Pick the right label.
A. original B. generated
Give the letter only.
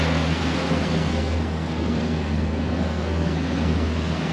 B